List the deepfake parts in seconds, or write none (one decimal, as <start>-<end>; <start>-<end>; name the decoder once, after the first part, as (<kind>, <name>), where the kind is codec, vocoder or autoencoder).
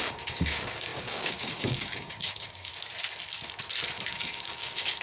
0.0-2.7 (codec, DAC); 4.1-5.0